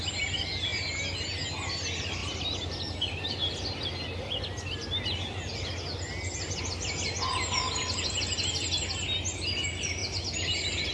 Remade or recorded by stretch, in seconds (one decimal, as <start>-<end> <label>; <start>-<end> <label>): 0.0-10.9 recorded